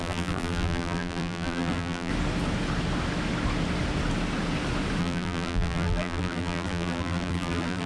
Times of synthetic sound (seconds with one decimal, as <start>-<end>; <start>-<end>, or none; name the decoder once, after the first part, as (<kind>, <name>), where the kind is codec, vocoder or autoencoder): 0.0-2.1 (vocoder, BigVGAN v2); 5.0-7.9